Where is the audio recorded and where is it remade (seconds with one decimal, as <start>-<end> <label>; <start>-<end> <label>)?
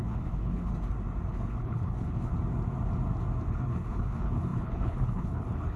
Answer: 0.0-0.7 remade; 0.7-1.3 recorded; 1.3-2.3 remade; 2.3-3.5 recorded; 3.5-5.8 remade